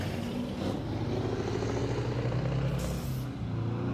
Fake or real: real